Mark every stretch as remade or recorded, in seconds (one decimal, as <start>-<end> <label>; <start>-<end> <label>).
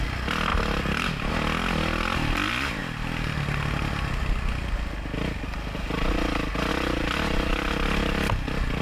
0.0-8.8 recorded